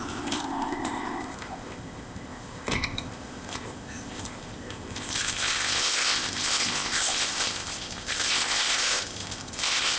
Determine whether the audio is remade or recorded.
remade